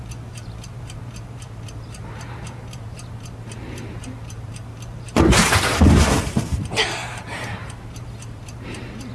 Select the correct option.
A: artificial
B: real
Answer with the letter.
A